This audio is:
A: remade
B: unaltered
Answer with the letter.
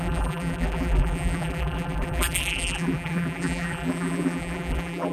A